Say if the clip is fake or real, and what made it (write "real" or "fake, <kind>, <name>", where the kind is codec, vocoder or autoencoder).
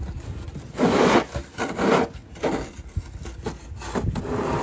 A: real